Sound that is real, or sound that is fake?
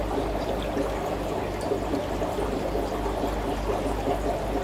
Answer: real